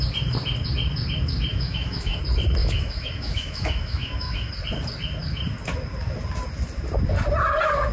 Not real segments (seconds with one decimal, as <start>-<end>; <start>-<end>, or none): 1.5-2.2; 2.6-4.5